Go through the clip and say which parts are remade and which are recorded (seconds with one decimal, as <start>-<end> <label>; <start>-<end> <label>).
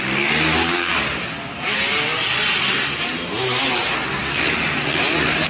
0.0-5.5 recorded